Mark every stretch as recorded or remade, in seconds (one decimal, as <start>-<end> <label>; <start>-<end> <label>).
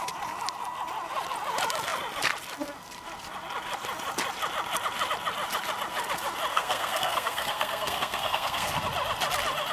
0.0-6.5 recorded; 6.5-8.8 remade; 8.8-9.7 recorded